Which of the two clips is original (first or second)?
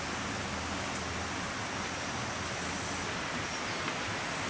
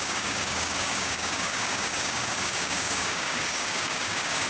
first